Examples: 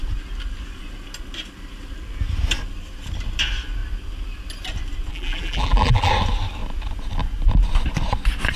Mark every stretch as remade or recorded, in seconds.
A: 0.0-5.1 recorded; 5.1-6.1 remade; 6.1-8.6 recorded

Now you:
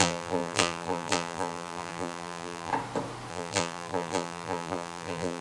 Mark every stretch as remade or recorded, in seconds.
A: 0.0-2.7 remade; 2.7-3.3 recorded; 3.3-5.4 remade

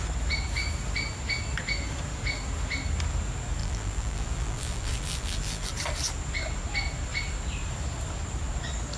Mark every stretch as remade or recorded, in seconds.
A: 0.0-3.6 recorded; 3.6-5.7 remade; 5.7-9.0 recorded